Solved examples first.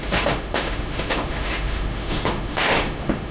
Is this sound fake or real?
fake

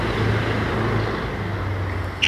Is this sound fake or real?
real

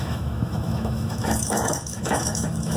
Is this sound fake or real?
fake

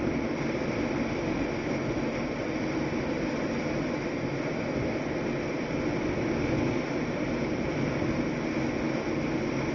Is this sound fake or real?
real